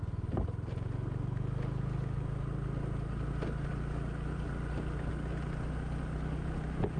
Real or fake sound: real